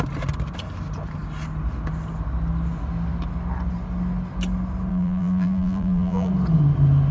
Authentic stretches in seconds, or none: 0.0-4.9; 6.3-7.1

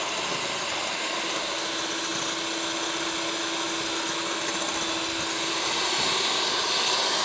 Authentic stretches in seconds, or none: 0.0-7.2

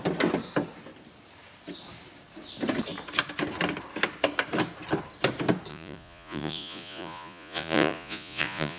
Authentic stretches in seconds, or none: 0.0-5.7

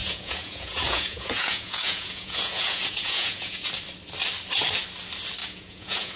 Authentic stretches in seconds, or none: 3.7-5.4